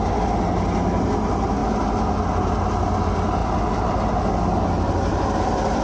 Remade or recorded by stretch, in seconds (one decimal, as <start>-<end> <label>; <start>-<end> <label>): 0.0-5.8 recorded